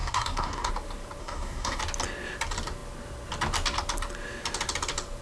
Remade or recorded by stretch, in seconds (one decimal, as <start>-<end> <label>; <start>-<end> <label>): 0.0-0.7 remade; 0.7-1.2 recorded; 1.2-1.8 remade; 1.8-5.2 recorded